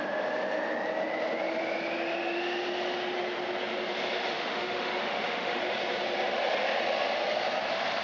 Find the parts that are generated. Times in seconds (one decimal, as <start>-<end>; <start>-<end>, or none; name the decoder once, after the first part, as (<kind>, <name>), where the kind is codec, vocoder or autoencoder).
4.3-5.6 (autoencoder, DAC-VAE)